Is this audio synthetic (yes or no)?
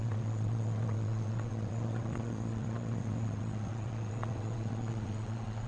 yes